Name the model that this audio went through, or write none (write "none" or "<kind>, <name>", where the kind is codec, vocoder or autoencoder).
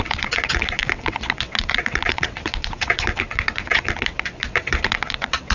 vocoder, WaveNeXt